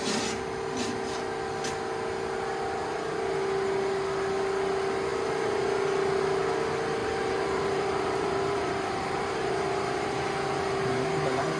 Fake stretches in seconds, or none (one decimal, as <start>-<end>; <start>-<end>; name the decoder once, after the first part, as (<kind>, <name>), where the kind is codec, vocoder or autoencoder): 7.0-9.5 (vocoder, BigVGAN v2)